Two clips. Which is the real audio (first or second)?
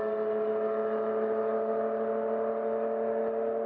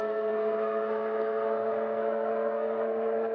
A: first